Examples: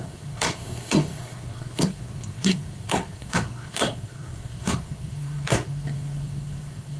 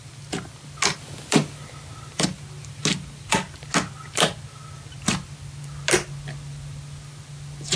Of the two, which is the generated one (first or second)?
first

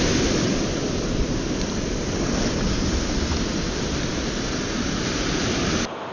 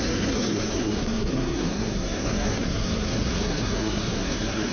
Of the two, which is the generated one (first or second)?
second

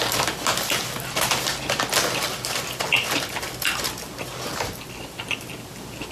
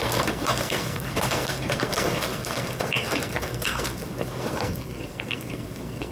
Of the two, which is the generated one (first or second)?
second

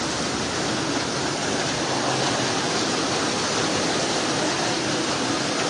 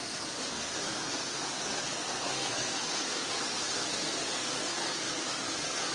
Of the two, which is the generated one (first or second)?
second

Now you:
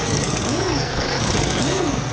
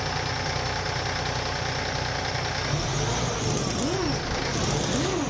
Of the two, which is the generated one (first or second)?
first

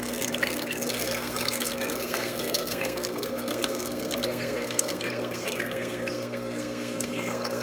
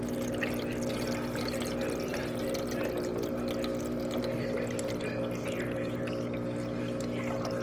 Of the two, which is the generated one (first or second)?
first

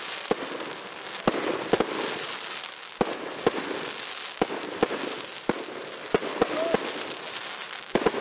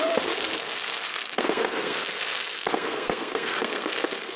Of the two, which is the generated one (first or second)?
second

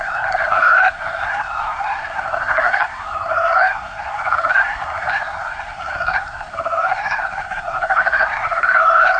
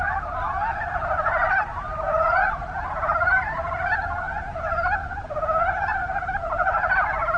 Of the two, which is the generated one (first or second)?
first